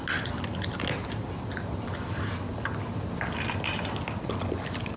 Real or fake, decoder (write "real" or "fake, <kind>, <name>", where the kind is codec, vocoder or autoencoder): real